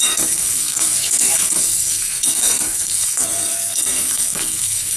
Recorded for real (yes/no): no